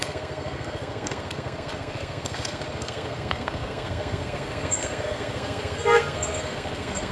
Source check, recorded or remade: remade